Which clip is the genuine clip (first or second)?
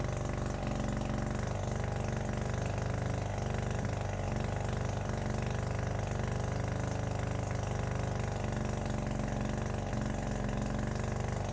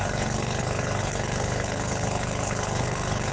first